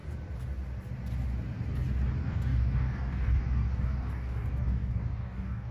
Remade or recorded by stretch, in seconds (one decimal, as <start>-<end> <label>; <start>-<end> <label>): 0.0-2.2 recorded; 2.2-5.7 remade